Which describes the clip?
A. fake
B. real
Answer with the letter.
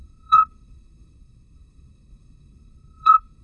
A